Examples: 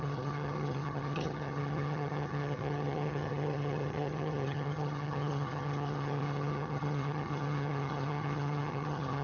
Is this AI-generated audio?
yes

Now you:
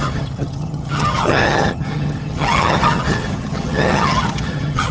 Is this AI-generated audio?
yes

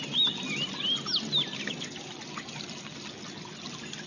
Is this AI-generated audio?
no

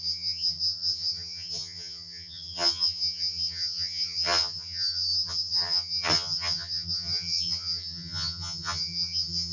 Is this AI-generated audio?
yes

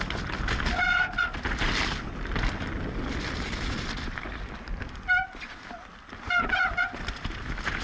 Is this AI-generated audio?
no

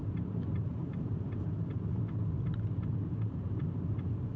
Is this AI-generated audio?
no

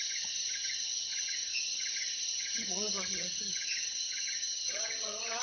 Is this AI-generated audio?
yes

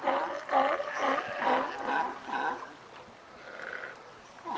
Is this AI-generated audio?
no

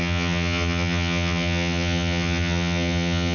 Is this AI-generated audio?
yes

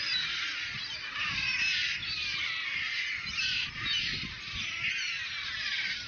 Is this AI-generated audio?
no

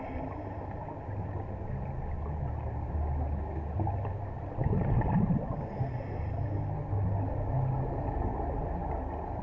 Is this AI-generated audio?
no